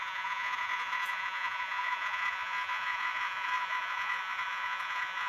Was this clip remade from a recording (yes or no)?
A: yes